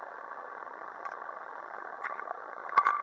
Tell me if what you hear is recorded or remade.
remade